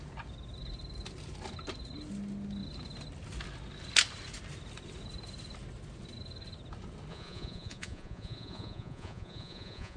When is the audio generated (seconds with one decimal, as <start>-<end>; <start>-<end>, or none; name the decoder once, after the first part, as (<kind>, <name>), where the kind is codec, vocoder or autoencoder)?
7.1-10.0 (vocoder, Vocos)